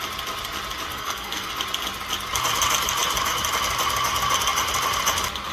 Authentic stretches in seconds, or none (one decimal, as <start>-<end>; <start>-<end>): 0.0-0.9; 1.5-5.5